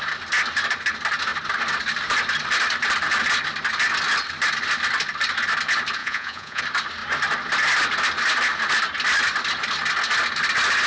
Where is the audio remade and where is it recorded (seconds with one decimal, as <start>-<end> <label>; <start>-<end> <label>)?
0.0-6.0 recorded; 6.0-6.6 remade; 6.6-10.9 recorded